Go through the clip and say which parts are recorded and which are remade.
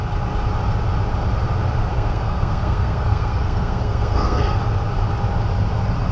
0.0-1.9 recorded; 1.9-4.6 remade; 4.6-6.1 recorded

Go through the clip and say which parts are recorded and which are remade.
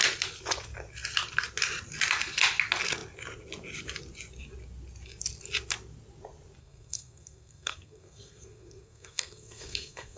0.0-6.6 recorded; 6.6-10.2 remade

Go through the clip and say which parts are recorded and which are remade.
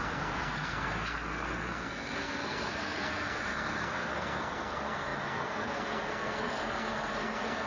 0.0-7.7 remade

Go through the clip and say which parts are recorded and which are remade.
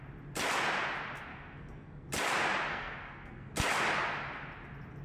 0.0-1.3 recorded; 1.3-2.1 remade; 2.1-2.7 recorded; 2.7-3.5 remade; 3.5-5.0 recorded